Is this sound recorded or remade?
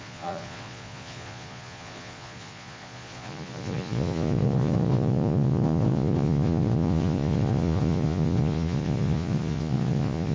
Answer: remade